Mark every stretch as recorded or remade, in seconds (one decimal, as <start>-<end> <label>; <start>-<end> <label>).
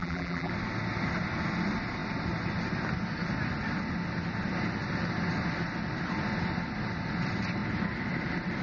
0.0-0.5 remade; 0.5-8.6 recorded